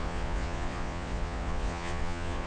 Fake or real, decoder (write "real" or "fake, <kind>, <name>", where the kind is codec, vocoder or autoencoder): fake, vocoder, Vocos